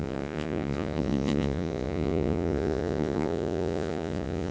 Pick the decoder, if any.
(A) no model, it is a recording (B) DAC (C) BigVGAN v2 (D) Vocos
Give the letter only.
D